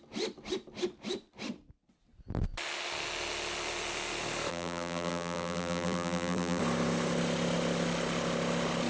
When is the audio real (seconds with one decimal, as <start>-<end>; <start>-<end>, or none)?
0.0-4.5; 6.6-8.9